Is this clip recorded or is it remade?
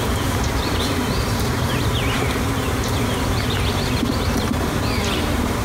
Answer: remade